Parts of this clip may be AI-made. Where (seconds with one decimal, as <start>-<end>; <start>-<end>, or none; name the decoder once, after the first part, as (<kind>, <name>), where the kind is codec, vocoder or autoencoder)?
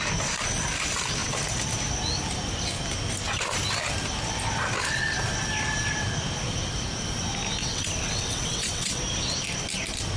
7.6-9.0 (vocoder, WaveNeXt)